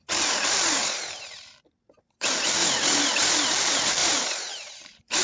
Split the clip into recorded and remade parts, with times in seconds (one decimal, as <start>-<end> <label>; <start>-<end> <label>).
0.0-0.8 remade; 0.8-2.0 recorded; 2.0-2.6 remade; 2.6-3.5 recorded; 3.5-4.0 remade; 4.0-4.5 recorded; 4.5-5.2 remade